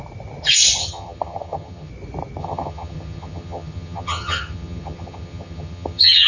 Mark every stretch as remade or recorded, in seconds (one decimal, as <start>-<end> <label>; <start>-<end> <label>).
0.0-0.8 recorded; 0.8-1.9 remade; 1.9-2.4 recorded; 2.4-6.3 remade